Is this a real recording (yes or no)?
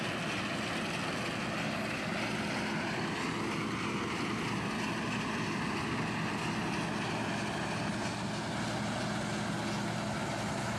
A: yes